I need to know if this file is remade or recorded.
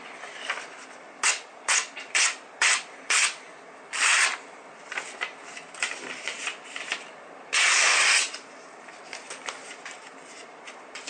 remade